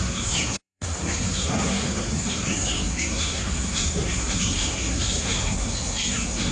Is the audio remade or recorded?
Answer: remade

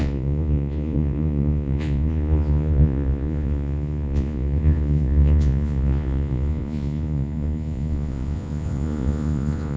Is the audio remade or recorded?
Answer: remade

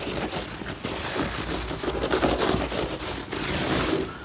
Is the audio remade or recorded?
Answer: recorded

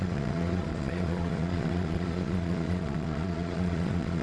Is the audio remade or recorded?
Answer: remade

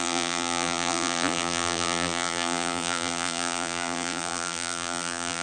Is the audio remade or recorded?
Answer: remade